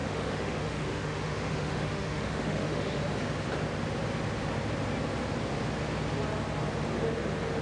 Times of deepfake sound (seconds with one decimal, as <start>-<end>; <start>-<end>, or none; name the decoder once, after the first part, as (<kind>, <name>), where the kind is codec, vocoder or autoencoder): 0.0-3.0 (autoencoder, DAC-VAE)